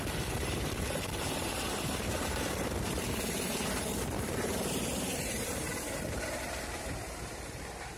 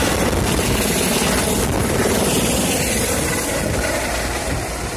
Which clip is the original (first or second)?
second